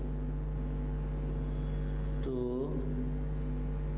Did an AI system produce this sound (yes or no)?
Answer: no